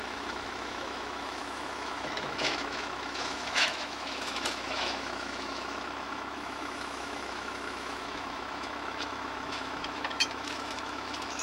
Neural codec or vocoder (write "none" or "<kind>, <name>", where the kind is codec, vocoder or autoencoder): autoencoder, DAC-VAE